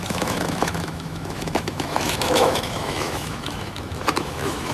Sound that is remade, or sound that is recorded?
remade